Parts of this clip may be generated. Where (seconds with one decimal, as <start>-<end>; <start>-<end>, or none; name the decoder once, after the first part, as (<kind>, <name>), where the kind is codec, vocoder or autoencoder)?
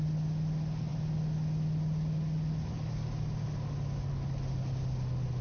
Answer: none